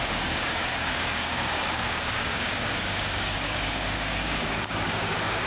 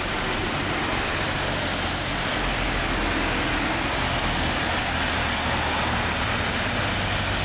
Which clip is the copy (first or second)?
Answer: first